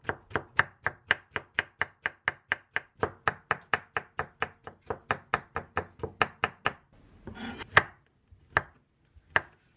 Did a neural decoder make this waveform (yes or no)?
no